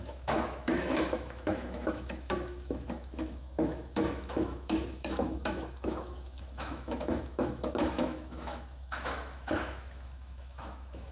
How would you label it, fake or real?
fake